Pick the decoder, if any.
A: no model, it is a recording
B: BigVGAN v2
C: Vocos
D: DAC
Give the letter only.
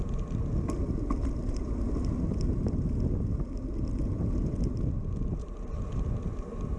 A